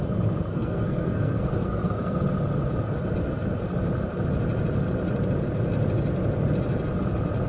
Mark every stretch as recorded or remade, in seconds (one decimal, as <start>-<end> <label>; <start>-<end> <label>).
0.0-0.5 recorded; 0.5-2.2 remade; 2.2-7.5 recorded